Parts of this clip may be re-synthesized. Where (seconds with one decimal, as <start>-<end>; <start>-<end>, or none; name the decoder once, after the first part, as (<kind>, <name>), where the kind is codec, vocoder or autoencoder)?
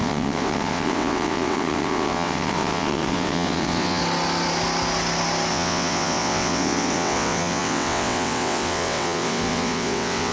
0.0-4.0 (vocoder, WaveNeXt); 5.5-10.3